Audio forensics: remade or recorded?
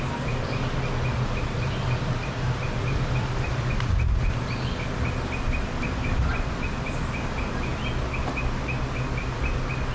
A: recorded